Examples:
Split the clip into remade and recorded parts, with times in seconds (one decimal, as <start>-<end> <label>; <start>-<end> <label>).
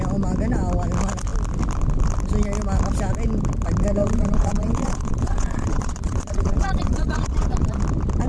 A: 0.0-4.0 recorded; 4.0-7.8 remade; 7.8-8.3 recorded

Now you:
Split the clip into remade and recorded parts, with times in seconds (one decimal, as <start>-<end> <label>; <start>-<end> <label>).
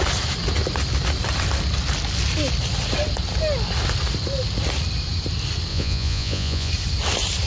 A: 0.0-5.7 recorded; 5.7-6.7 remade; 6.7-7.5 recorded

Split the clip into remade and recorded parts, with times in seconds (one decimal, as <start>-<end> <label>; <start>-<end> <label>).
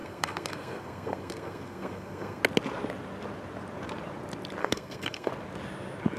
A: 0.0-2.4 remade; 2.4-4.6 recorded; 4.6-5.3 remade; 5.3-6.2 recorded